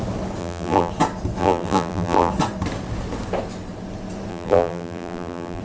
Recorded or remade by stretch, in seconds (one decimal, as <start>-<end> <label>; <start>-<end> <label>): 0.0-0.4 recorded; 0.4-0.9 remade; 0.9-1.4 recorded; 1.4-2.3 remade; 2.3-4.3 recorded; 4.3-5.6 remade